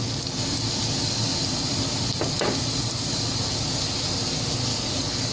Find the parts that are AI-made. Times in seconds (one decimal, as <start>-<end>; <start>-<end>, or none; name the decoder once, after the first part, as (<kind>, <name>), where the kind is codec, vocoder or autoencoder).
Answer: 4.7-5.3 (codec, DAC)